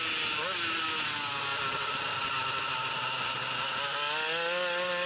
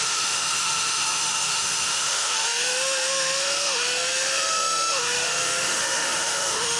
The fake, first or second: second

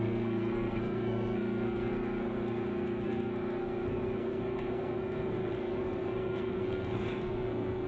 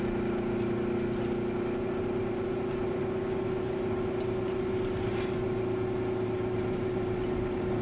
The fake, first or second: first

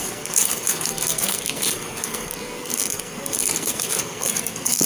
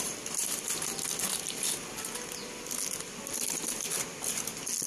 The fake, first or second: first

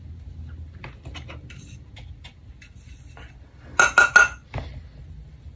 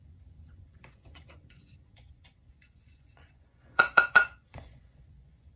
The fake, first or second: second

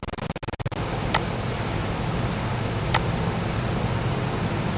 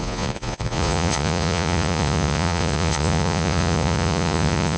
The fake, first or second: second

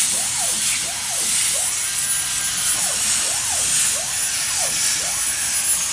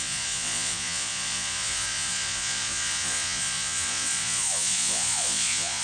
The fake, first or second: second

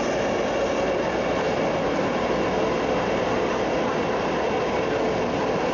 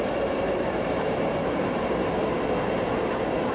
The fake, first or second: second